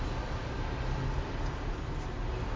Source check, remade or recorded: recorded